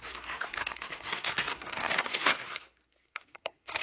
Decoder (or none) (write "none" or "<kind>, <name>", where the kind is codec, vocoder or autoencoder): codec, SNAC